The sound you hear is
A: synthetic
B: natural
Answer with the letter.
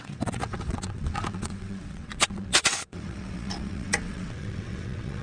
A